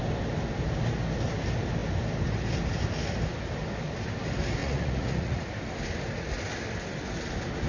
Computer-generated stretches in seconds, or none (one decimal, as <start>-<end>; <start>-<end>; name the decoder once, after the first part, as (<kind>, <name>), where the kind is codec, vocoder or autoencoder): 4.6-5.4 (vocoder, Vocos)